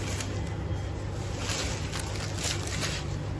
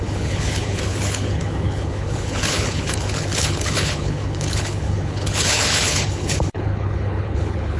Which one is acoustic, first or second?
first